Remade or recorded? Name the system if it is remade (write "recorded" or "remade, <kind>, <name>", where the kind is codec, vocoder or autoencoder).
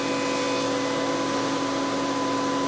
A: recorded